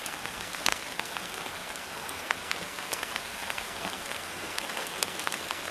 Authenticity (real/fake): fake